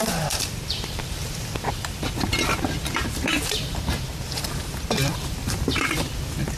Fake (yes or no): yes